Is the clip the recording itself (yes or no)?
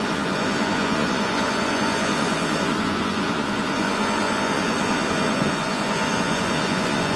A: no